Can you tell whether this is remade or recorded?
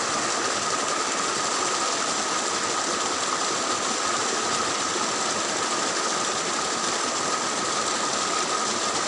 recorded